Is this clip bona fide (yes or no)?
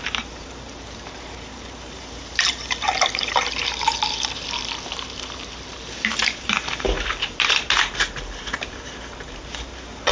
no